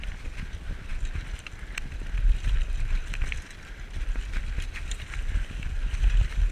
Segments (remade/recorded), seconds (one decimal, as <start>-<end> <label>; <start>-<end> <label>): 0.0-6.5 recorded